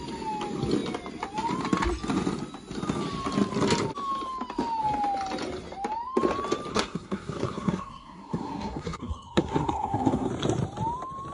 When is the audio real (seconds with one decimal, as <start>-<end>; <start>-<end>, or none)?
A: 0.0-6.7; 10.3-11.3